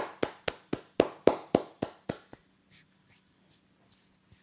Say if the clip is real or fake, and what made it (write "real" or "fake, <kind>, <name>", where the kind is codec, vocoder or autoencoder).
real